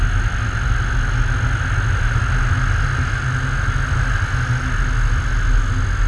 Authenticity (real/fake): real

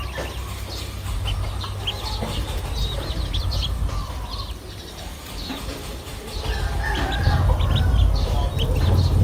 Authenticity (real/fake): real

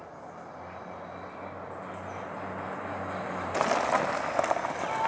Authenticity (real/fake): real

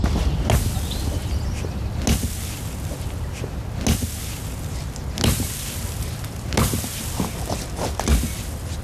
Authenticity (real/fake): real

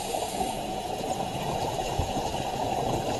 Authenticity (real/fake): fake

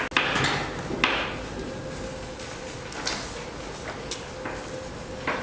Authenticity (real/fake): real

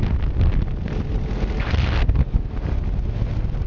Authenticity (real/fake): real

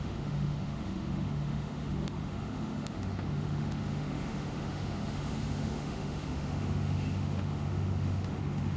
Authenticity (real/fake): fake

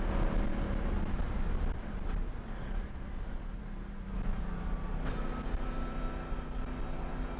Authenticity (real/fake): real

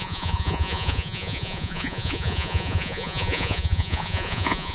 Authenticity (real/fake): fake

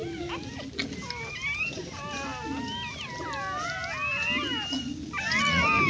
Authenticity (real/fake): real